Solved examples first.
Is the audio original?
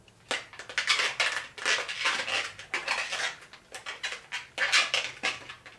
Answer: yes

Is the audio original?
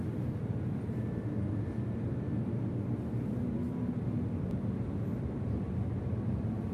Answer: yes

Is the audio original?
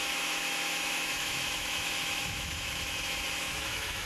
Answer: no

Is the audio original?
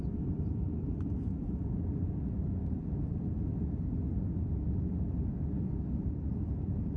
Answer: yes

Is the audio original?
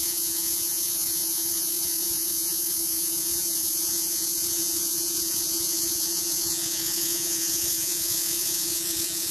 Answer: no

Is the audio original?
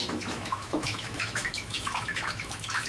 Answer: no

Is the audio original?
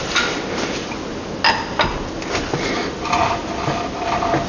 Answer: yes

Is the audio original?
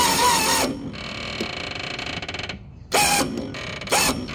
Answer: yes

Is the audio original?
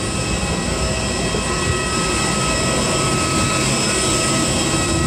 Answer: yes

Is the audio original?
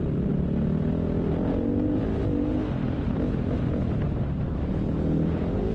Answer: yes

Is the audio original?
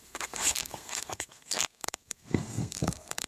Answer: no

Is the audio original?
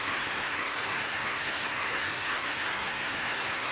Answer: no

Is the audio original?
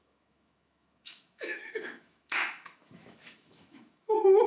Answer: no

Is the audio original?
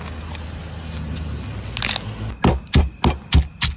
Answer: yes